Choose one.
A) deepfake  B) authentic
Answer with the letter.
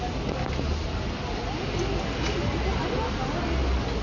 B